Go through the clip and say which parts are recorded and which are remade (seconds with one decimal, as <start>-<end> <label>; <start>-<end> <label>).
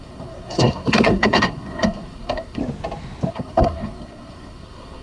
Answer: 0.0-2.6 remade; 2.6-3.3 recorded; 3.3-5.0 remade